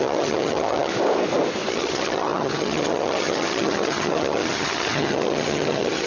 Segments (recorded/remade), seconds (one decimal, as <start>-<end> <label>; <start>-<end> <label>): 0.0-0.9 remade; 0.9-1.7 recorded; 1.7-6.1 remade